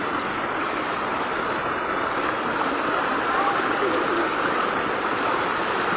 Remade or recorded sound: recorded